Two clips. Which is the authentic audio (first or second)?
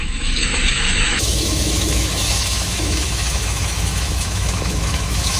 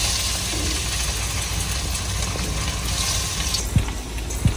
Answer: second